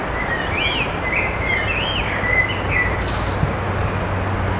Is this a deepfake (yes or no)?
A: no